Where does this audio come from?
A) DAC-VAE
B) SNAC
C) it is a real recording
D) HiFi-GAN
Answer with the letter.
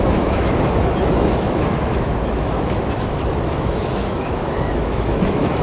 A